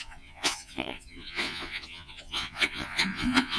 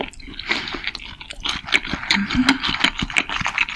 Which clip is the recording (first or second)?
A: second